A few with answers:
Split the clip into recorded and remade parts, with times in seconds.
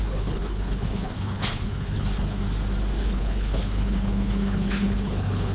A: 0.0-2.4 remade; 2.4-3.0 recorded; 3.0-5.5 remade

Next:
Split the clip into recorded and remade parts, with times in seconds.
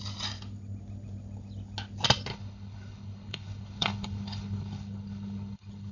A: 0.0-2.3 recorded; 2.3-5.9 remade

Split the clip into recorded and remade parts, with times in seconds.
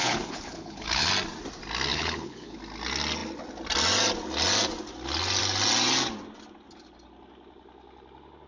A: 0.0-1.1 remade; 1.1-1.9 recorded; 1.9-2.6 remade; 2.6-8.5 recorded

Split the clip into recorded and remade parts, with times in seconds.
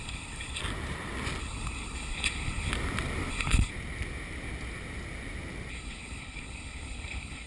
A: 0.0-0.6 remade; 0.6-1.4 recorded; 1.4-2.7 remade; 2.7-3.3 recorded; 3.3-3.7 remade; 3.7-5.7 recorded; 5.7-7.5 remade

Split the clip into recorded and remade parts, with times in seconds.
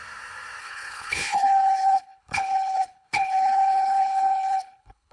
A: 0.0-0.6 recorded; 0.6-5.1 remade